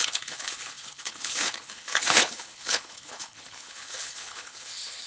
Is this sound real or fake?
fake